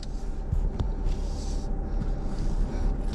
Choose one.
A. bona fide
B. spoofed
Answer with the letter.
A